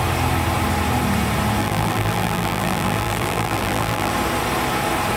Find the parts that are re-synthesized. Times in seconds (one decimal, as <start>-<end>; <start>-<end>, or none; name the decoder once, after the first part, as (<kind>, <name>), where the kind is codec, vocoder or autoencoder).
1.6-4.1 (vocoder, BigVGAN v2)